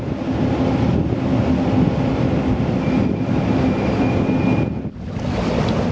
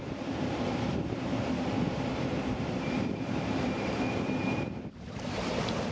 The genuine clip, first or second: first